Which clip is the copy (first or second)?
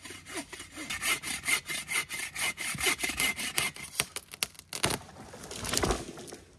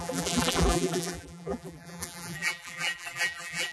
second